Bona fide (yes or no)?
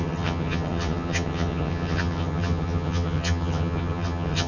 no